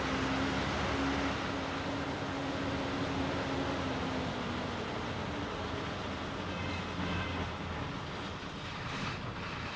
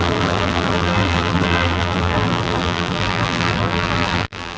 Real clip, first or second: first